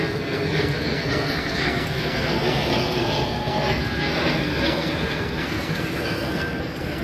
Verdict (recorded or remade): remade